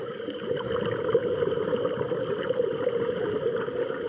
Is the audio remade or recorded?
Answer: recorded